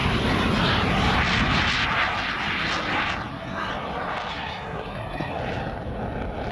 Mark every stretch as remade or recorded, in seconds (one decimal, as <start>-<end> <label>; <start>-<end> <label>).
0.0-3.3 recorded; 3.3-3.7 remade; 3.7-4.3 recorded; 4.3-5.4 remade; 5.4-6.5 recorded